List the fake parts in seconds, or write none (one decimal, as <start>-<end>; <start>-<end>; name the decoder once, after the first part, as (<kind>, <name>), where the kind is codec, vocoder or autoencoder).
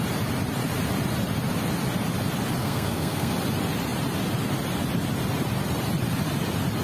2.6-3.3 (codec, SNAC)